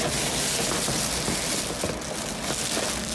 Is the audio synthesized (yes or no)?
no